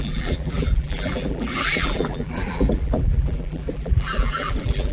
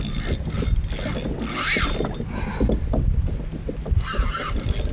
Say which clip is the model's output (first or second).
first